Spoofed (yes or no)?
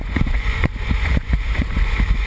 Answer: yes